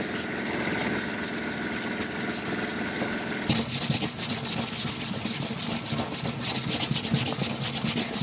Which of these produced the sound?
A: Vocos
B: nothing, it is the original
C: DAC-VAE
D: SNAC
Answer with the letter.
B